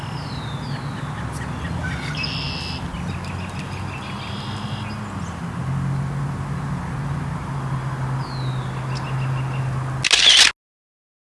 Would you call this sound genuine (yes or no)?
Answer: yes